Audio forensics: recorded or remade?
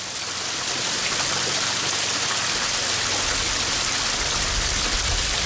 recorded